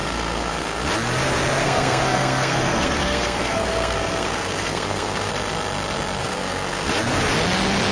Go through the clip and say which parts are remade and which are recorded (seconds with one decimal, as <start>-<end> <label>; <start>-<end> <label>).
0.0-0.8 remade; 0.8-1.6 recorded; 1.6-5.3 remade; 5.3-6.2 recorded; 6.2-6.9 remade; 6.9-7.9 recorded

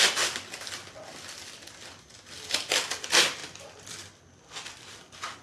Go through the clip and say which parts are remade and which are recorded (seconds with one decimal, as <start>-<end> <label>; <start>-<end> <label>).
0.0-1.1 recorded; 1.1-2.7 remade; 2.7-5.4 recorded

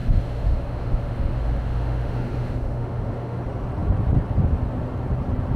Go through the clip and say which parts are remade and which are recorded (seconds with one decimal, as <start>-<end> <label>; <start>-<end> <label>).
0.0-3.4 remade; 3.4-5.6 recorded